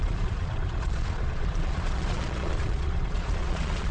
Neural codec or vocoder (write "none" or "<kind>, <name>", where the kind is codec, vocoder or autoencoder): vocoder, Vocos